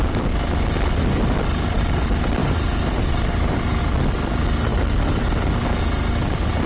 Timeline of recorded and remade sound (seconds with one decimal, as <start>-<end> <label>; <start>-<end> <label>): 0.0-2.4 recorded; 2.4-3.8 remade; 3.8-6.7 recorded